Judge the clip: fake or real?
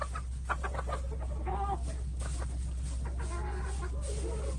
real